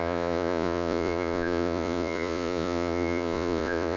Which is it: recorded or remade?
remade